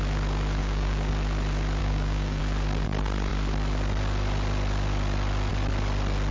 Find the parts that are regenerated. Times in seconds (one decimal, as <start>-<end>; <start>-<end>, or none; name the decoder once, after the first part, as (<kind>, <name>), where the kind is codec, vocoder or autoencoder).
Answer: 0.6-1.1 (codec, DAC); 1.8-2.4